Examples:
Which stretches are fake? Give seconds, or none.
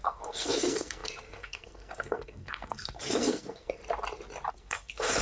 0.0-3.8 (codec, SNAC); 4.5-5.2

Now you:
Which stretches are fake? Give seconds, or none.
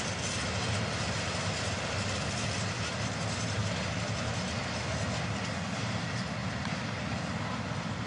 none